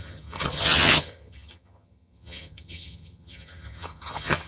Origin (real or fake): fake